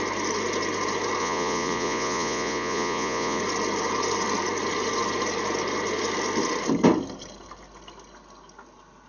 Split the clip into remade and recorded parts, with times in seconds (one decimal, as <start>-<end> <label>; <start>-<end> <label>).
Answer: 0.0-1.2 recorded; 1.2-3.4 remade; 3.4-9.1 recorded